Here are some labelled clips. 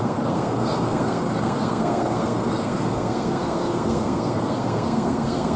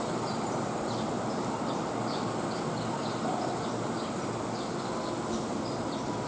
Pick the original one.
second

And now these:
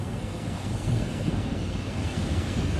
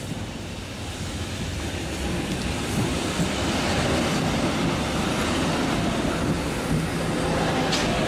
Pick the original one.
second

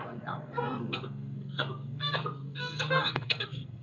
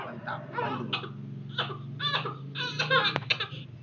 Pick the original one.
second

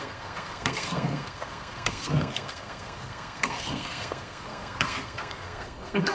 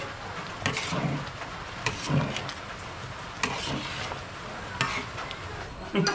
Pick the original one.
second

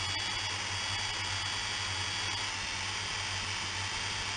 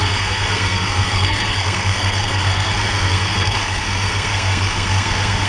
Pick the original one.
first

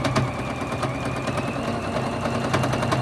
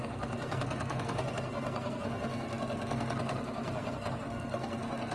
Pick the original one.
first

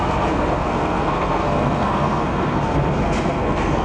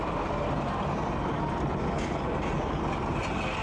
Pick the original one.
second